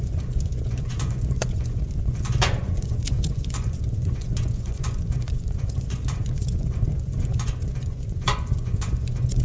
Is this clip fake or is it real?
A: fake